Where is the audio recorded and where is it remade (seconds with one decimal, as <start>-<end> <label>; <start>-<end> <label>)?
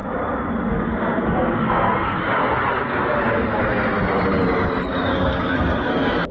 0.0-0.7 recorded; 0.7-2.2 remade; 2.2-2.8 recorded; 2.8-3.2 remade; 3.2-5.1 recorded; 5.1-6.3 remade